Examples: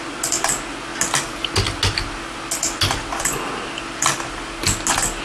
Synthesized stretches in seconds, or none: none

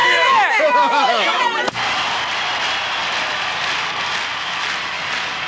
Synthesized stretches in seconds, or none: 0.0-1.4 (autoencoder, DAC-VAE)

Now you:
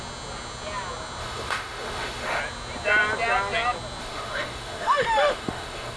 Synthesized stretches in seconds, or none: 1.2-2.4 (autoencoder, DAC-VAE); 4.0-6.0

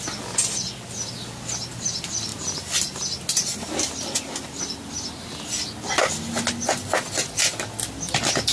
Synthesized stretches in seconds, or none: none

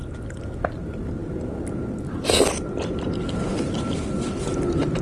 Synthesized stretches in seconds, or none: none

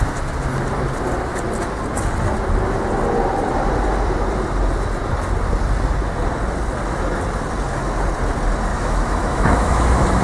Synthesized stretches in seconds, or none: 8.7-10.2 (autoencoder, DAC-VAE)